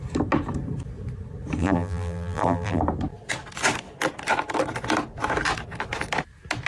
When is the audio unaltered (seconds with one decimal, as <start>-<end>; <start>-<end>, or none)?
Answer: 0.0-1.6; 2.8-6.7